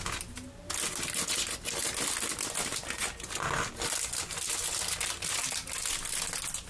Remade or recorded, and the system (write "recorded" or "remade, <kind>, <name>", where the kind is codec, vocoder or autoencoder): recorded